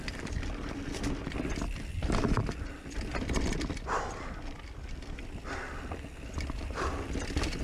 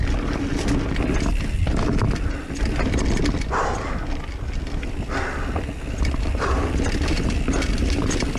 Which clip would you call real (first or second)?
second